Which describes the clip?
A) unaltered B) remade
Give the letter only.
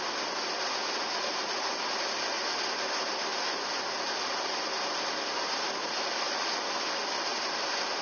A